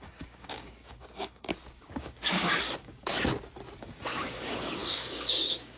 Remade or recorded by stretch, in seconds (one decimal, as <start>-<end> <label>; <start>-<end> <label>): 0.0-3.1 remade; 3.1-3.8 recorded; 3.8-5.8 remade